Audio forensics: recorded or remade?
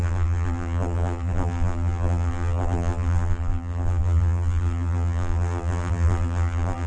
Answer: remade